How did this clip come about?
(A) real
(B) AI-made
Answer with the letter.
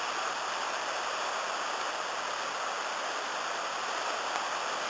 A